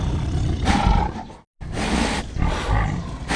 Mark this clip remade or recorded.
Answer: recorded